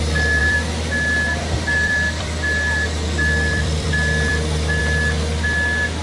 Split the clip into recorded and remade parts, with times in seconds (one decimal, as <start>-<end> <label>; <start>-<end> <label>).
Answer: 0.0-0.4 recorded; 0.4-3.9 remade; 3.9-6.0 recorded